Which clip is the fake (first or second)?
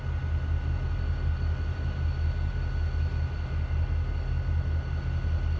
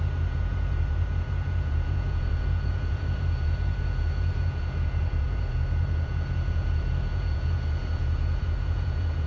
second